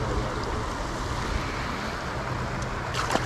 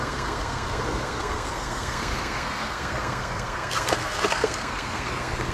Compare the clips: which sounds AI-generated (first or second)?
second